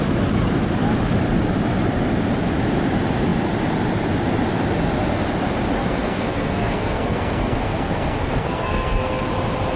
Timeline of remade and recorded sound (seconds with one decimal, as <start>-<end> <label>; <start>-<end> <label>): 0.0-5.8 recorded; 5.8-9.3 remade; 9.3-9.8 recorded